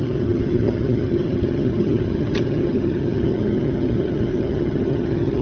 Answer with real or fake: fake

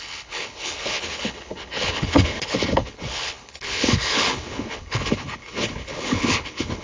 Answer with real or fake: fake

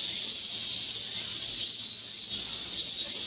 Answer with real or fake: real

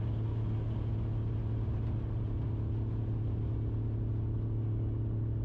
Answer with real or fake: real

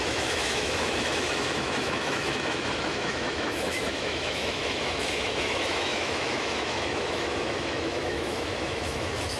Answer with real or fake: fake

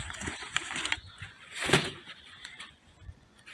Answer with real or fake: fake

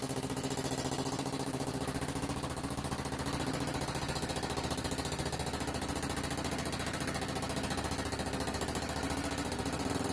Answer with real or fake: real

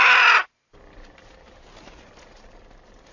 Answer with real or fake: real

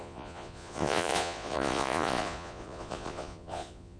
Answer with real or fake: fake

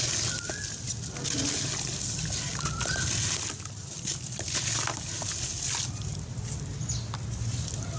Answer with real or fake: real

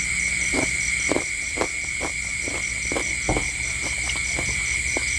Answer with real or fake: real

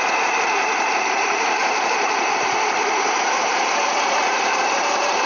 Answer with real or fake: real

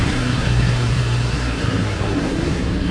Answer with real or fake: fake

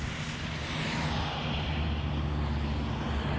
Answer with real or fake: real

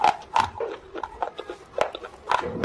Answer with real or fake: real